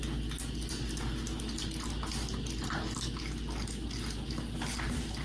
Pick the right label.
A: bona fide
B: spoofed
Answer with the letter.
A